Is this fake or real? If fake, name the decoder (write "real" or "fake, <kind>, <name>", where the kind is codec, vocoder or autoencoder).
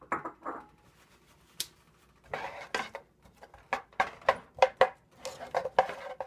real